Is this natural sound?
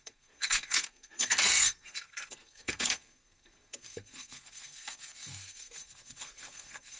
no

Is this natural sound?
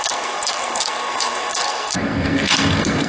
no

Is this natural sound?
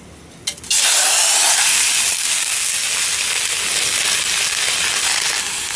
yes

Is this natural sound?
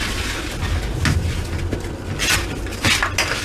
yes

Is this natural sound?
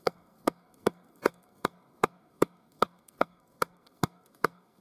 no